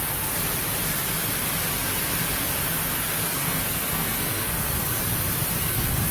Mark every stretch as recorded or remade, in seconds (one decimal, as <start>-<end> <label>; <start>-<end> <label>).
0.0-3.2 recorded; 3.2-5.0 remade; 5.0-5.6 recorded; 5.6-6.1 remade